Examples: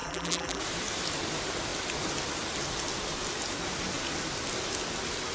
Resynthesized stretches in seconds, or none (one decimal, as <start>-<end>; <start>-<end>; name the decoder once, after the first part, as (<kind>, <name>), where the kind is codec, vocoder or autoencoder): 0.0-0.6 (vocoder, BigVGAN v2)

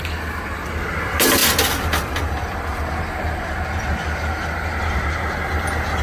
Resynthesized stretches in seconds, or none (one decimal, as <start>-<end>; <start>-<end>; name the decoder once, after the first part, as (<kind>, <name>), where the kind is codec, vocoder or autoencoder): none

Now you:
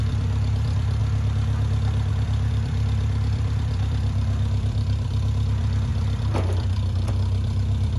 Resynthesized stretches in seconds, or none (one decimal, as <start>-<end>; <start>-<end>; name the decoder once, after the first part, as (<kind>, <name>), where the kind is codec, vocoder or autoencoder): 0.0-1.0 (vocoder, BigVGAN v2); 2.1-8.0

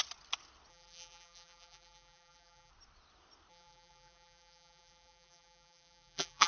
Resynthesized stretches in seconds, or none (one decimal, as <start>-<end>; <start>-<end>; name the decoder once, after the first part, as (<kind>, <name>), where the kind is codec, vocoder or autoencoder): 0.7-2.7 (vocoder, BigVGAN v2); 3.5-6.5